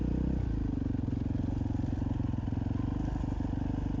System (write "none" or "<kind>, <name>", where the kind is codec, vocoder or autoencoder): none